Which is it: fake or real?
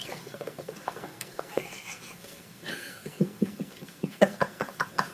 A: fake